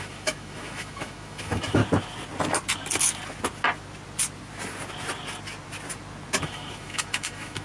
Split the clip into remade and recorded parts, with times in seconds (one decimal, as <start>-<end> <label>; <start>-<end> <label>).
0.0-1.8 remade; 1.8-6.4 recorded; 6.4-7.6 remade